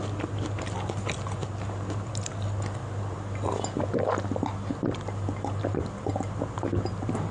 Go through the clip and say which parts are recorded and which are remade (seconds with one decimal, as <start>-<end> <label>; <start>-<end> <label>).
0.0-7.3 recorded